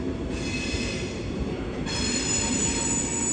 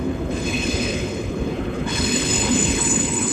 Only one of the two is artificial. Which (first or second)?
second